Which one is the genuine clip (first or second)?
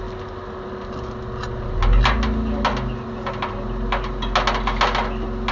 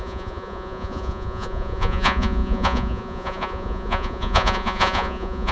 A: first